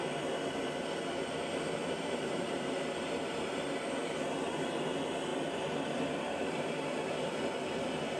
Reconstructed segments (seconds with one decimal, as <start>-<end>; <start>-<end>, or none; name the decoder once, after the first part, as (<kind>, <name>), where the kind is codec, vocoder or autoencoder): 1.8-3.9 (vocoder, BigVGAN v2); 5.3-7.3

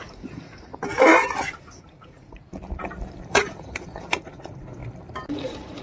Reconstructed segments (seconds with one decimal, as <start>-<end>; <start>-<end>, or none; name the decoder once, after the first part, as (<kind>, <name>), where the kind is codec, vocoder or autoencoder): 0.0-0.7 (vocoder, Vocos); 1.8-2.4; 3.3-4.8; 5.3-5.8

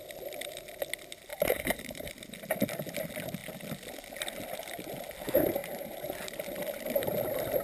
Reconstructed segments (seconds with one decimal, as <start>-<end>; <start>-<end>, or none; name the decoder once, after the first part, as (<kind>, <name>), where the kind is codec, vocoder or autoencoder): 1.3-2.1 (vocoder, BigVGAN v2); 5.6-6.1

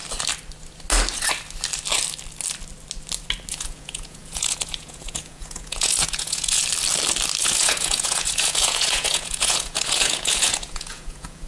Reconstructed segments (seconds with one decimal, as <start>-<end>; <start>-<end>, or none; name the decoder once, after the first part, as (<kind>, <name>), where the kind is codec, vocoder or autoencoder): 3.5-6.6 (vocoder, Vocos); 7.4-11.5

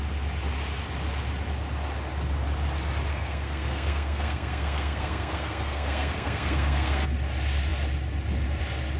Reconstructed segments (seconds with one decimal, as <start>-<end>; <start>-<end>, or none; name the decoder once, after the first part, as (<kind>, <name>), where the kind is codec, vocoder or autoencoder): 3.1-7.1 (codec, SNAC)

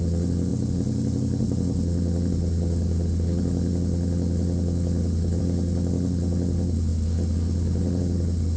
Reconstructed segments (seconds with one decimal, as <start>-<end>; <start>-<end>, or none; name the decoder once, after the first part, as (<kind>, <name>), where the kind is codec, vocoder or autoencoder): none